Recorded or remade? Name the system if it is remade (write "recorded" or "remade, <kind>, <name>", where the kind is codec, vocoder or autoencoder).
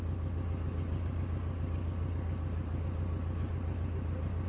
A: recorded